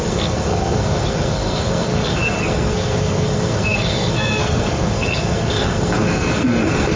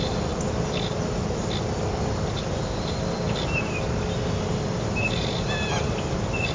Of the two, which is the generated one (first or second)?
first